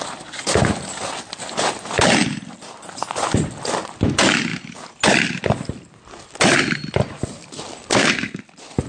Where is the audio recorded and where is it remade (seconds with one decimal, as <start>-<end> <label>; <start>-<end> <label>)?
0.0-7.9 recorded; 7.9-8.4 remade; 8.4-8.9 recorded